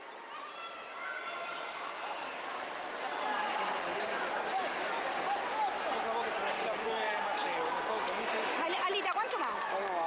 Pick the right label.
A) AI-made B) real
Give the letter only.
B